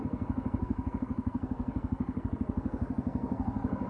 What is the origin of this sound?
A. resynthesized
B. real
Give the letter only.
A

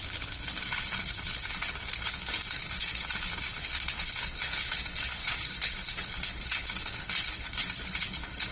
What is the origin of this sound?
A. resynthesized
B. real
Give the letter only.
A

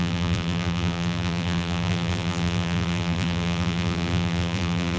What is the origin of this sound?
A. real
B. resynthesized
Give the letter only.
B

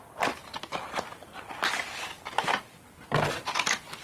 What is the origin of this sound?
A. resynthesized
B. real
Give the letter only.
B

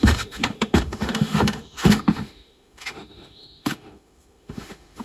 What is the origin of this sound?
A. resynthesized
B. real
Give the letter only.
A